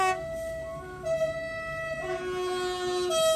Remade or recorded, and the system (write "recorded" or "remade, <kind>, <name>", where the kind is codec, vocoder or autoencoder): recorded